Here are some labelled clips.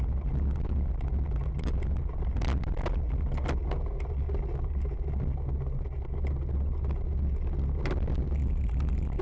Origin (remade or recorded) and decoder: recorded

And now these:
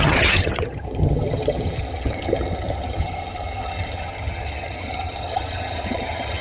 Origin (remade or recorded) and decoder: remade, vocoder, HiFi-GAN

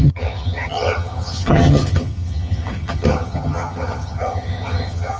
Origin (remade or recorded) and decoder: remade, vocoder, HiFi-GAN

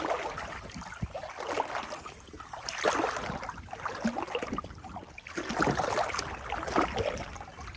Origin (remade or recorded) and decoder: recorded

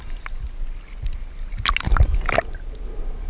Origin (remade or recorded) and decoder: recorded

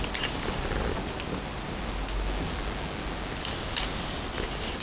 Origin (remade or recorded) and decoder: recorded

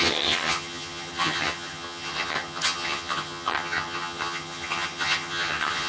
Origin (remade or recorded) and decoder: remade, vocoder, HiFi-GAN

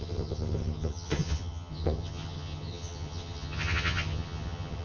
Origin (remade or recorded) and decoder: remade, vocoder, HiFi-GAN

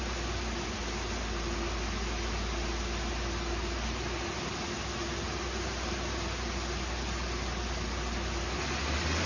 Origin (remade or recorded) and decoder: recorded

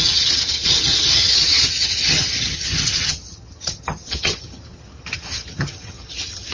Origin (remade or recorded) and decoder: remade, vocoder, HiFi-GAN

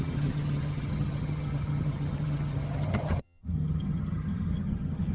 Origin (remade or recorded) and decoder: remade, vocoder, HiFi-GAN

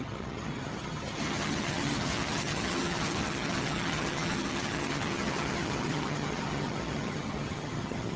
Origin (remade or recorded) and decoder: remade, vocoder, HiFi-GAN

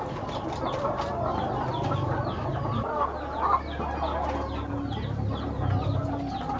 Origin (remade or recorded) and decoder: recorded